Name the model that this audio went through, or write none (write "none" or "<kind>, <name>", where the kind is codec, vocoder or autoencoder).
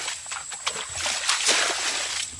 none